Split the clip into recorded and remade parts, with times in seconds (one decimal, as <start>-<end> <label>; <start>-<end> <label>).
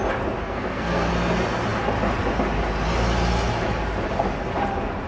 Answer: 0.0-0.4 recorded; 0.4-1.1 remade; 1.1-5.1 recorded